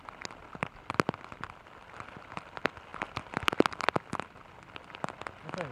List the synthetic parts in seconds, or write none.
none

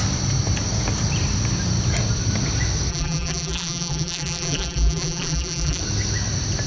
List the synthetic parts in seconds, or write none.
2.9-5.8 (vocoder, BigVGAN v2)

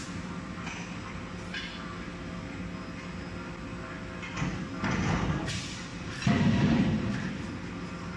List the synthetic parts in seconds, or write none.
5.9-7.5 (vocoder, BigVGAN v2)